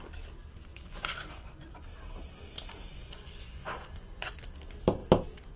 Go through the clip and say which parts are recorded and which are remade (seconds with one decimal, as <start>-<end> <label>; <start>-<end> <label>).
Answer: 0.0-0.7 recorded; 0.7-1.7 remade; 1.7-2.9 recorded; 2.9-4.3 remade; 4.3-5.6 recorded